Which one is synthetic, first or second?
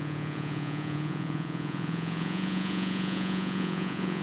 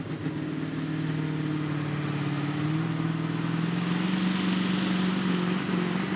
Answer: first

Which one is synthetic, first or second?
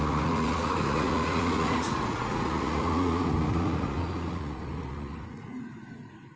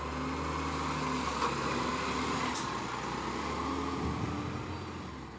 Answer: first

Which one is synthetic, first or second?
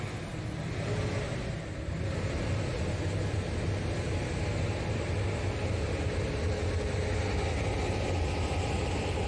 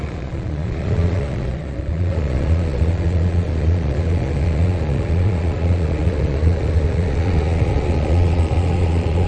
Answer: second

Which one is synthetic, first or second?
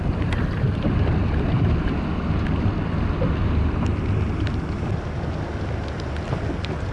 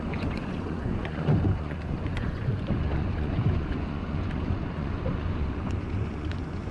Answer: second